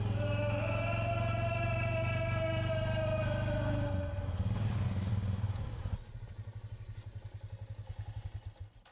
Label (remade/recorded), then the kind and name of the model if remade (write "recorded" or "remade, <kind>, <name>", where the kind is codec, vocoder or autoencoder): recorded